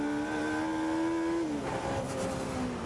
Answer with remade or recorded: recorded